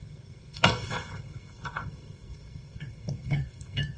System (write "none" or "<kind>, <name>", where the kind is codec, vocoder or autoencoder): codec, SNAC